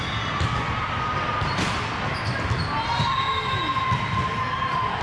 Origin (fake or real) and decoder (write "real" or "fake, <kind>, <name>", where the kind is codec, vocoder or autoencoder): real